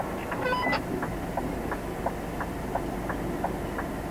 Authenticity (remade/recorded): recorded